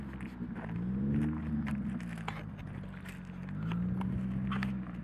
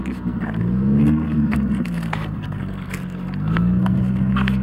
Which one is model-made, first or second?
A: second